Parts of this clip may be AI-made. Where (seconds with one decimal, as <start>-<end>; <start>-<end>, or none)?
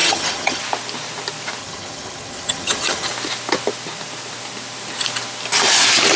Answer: 0.0-0.6; 1.6-3.1